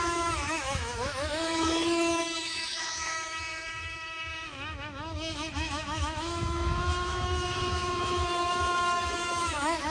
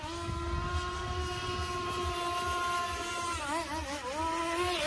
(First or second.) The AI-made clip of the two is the first